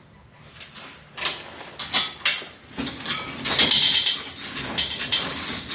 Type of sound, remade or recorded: recorded